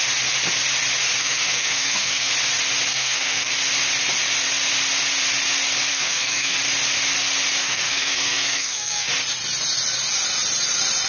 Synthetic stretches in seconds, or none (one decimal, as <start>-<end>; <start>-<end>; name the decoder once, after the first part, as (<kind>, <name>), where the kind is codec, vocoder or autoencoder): 1.2-2.3 (codec, SNAC); 2.9-3.5; 5.9-6.6; 7.6-9.1